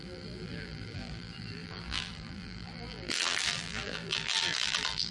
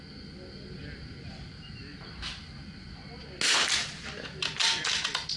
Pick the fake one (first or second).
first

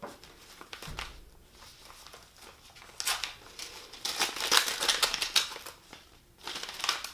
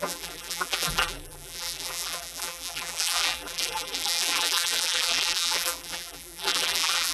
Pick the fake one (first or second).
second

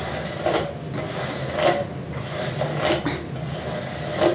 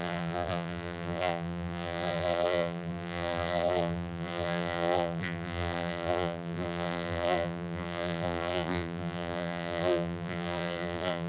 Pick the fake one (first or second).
second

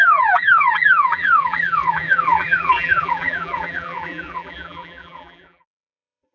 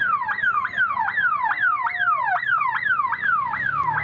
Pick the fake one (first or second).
first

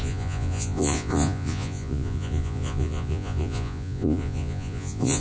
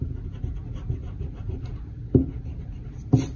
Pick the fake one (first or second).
first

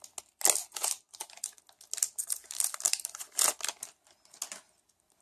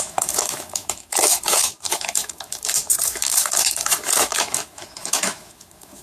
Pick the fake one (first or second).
second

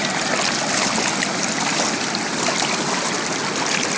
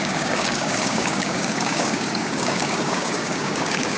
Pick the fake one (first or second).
second